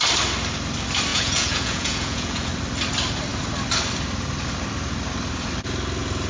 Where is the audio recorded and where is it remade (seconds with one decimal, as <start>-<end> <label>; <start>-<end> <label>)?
0.0-1.1 recorded; 1.1-2.5 remade; 2.5-6.3 recorded